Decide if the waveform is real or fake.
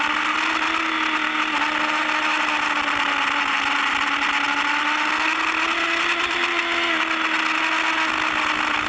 real